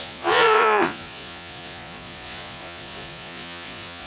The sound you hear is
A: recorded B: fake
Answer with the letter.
B